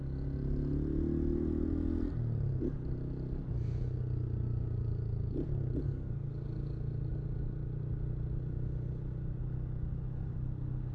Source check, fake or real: real